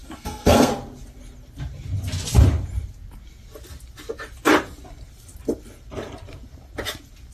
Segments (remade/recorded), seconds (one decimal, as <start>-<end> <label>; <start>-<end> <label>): 0.0-0.7 remade; 0.7-7.3 recorded